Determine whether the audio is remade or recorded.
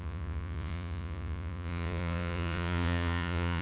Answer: remade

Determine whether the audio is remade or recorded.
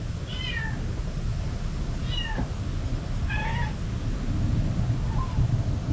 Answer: recorded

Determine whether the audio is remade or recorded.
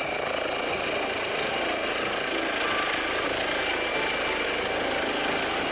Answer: recorded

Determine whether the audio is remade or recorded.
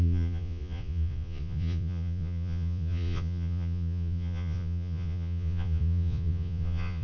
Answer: remade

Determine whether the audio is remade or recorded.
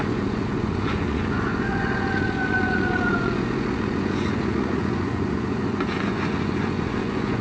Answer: remade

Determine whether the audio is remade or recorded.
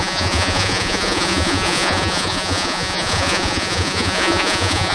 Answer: remade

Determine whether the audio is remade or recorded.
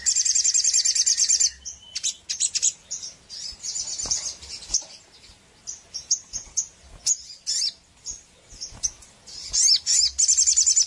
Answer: recorded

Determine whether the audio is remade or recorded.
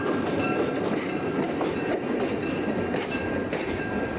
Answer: recorded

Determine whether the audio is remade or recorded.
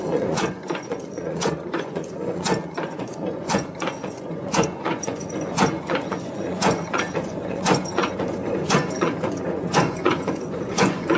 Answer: remade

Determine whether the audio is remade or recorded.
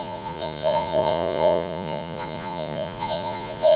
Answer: remade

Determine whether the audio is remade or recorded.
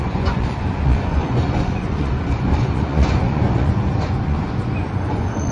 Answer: remade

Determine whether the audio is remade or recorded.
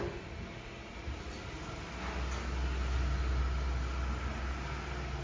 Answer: recorded